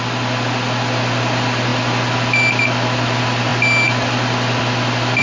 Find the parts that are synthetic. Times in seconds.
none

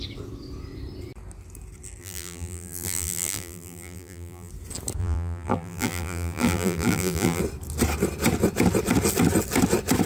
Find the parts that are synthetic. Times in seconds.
2.0-4.5; 5.0-7.4

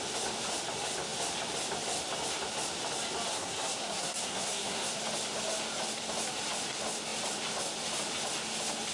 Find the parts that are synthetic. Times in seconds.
3.3-5.0

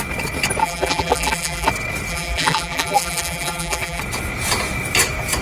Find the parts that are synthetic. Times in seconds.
0.6-1.7; 2.1-4.0